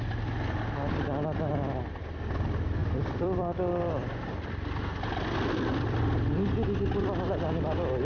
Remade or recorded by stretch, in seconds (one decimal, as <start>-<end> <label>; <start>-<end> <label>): 0.0-1.5 recorded; 1.5-2.1 remade; 2.1-2.8 recorded; 2.8-6.5 remade; 6.5-8.0 recorded